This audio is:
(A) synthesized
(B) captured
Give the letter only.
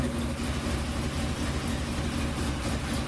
B